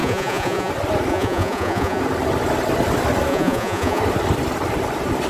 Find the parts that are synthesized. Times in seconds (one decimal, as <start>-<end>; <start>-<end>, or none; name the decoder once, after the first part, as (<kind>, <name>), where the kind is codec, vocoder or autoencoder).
0.0-0.7 (vocoder, Vocos); 1.1-2.0; 3.3-4.0